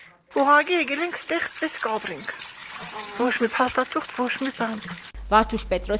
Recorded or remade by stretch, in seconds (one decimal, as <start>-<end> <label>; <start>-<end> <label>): 0.0-2.6 recorded; 2.6-3.7 remade; 3.7-6.0 recorded